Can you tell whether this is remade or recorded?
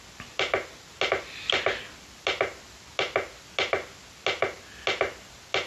recorded